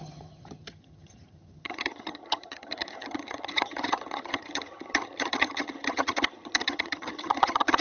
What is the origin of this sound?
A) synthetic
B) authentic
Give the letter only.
A